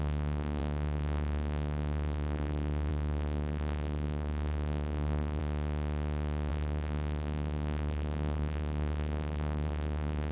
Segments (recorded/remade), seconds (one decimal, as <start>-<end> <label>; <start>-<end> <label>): 0.0-5.4 remade; 5.4-6.5 recorded; 6.5-10.3 remade